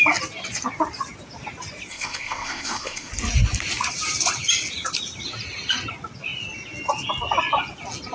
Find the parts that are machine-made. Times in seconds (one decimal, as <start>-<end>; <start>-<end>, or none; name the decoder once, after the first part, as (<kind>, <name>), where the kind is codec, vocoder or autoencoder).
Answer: 1.9-3.1 (codec, ZipCodec)